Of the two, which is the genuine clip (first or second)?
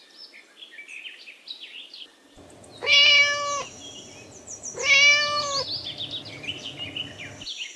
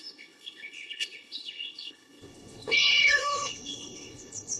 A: first